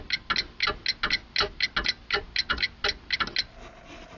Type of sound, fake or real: real